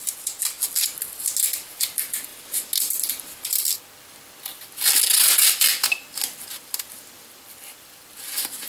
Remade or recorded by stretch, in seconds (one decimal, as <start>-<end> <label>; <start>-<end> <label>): 0.0-8.7 recorded